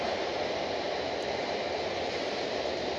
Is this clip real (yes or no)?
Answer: no